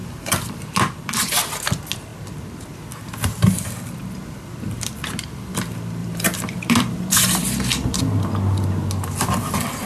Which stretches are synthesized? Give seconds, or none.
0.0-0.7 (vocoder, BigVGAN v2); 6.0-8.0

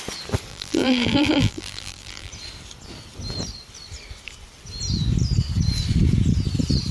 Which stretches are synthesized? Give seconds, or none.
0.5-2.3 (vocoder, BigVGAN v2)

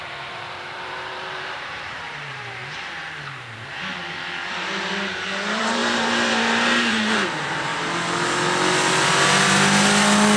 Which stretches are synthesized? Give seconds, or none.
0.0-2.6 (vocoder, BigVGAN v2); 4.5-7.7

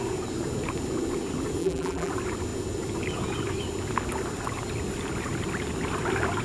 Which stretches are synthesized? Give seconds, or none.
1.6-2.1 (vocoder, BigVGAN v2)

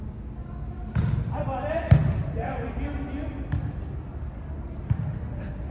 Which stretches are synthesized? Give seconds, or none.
none

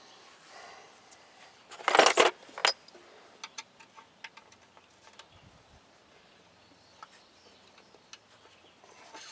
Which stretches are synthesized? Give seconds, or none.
none

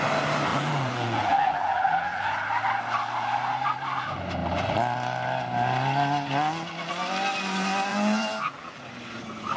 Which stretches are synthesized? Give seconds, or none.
0.5-2.2 (vocoder, BigVGAN v2); 7.9-8.8